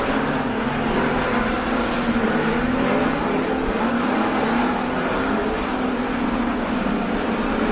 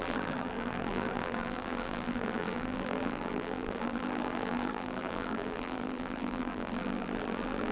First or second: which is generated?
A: second